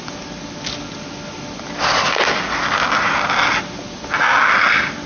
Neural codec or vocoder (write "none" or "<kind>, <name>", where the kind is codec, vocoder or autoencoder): none